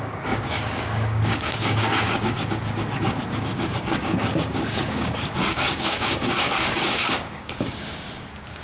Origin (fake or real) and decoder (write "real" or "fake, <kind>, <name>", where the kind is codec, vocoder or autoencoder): fake, codec, DAC